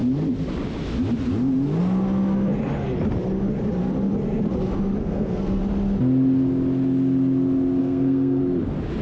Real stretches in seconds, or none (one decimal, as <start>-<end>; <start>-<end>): 0.0-5.0; 5.6-7.8; 8.4-9.0